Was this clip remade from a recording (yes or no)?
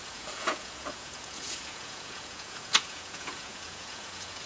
yes